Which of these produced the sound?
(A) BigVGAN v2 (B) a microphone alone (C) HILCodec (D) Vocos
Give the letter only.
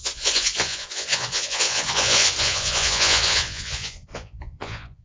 D